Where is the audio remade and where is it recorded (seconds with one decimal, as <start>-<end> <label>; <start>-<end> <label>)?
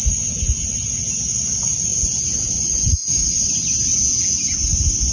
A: 0.0-3.9 recorded; 3.9-4.6 remade; 4.6-5.1 recorded